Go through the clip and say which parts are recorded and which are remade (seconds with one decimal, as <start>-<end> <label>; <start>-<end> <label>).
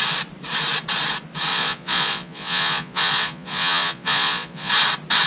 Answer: 0.0-1.5 recorded; 1.5-4.7 remade; 4.7-5.3 recorded